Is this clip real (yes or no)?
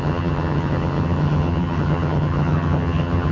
no